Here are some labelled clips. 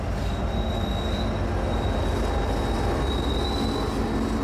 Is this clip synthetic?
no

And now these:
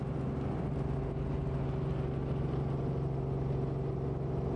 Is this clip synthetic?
no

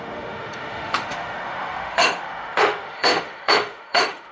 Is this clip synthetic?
yes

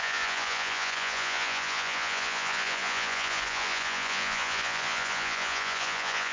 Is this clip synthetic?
yes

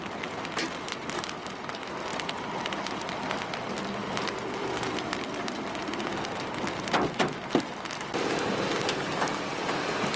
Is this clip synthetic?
no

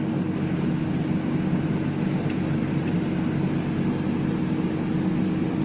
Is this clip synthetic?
no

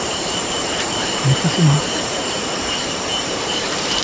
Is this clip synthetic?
yes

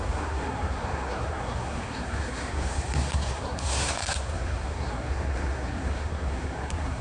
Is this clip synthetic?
yes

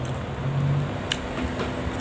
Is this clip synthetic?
no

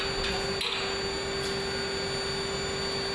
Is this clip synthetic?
no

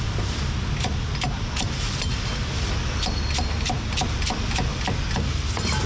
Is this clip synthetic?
no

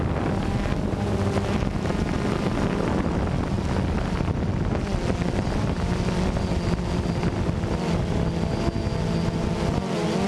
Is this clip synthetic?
no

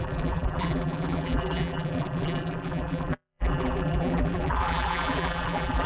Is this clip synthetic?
yes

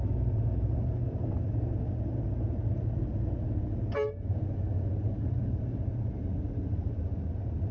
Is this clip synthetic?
no